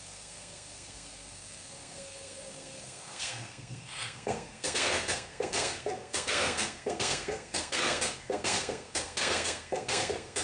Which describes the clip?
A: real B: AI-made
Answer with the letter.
B